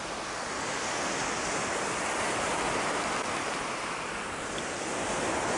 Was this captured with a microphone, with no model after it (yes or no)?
yes